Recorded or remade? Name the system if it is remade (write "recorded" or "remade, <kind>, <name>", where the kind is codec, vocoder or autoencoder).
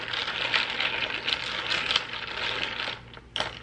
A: recorded